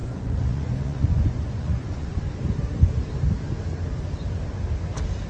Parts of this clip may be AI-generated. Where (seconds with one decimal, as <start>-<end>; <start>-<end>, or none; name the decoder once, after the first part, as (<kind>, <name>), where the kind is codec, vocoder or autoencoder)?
0.0-2.2 (vocoder, Vocos)